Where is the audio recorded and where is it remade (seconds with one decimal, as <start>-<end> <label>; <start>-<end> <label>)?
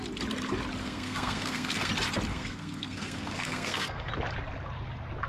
0.0-0.8 recorded; 0.8-1.9 remade; 1.9-2.3 recorded; 2.3-4.1 remade; 4.1-5.3 recorded